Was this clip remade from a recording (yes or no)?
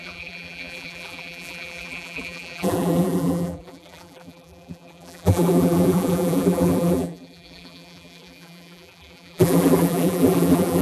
yes